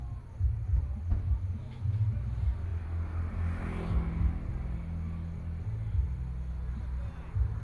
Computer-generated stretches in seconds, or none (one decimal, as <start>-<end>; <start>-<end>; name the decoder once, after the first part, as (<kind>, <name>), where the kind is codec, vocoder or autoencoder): none

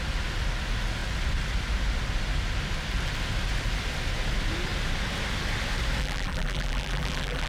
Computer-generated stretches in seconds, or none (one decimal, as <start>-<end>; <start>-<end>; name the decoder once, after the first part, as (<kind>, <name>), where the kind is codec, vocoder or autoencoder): 6.0-7.5 (vocoder, BigVGAN v2)

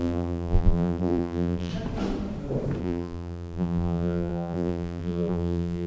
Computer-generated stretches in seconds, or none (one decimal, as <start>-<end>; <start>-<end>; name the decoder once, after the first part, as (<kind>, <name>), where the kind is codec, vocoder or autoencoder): 0.0-1.7 (vocoder, BigVGAN v2); 2.8-5.9

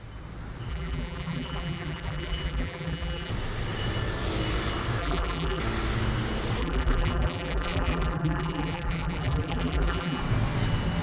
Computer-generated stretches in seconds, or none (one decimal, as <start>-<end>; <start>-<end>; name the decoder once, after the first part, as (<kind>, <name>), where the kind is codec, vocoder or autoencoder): 0.7-3.3 (vocoder, BigVGAN v2); 5.0-5.6; 6.6-10.2

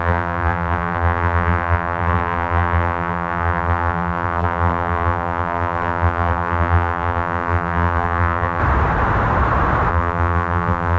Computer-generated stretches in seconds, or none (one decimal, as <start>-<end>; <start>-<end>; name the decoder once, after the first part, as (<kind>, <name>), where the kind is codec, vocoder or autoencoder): 0.0-8.6 (vocoder, BigVGAN v2); 9.9-11.0

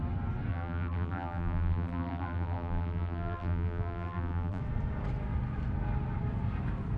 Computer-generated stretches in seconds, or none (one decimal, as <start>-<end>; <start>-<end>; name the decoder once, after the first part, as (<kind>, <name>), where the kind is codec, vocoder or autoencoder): 0.5-4.6 (vocoder, BigVGAN v2)